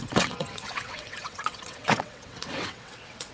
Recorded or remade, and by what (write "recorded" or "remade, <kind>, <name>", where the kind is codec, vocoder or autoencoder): remade, vocoder, WaveNeXt